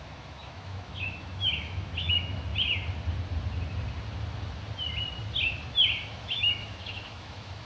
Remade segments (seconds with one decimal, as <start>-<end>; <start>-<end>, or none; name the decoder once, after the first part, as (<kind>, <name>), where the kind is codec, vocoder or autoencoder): 0.0-2.5 (autoencoder, DAC-VAE); 6.2-7.7